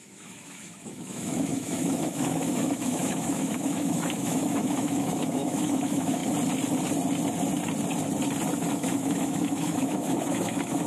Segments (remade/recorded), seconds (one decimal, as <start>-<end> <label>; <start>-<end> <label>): 0.0-6.2 remade; 6.2-8.7 recorded; 8.7-10.9 remade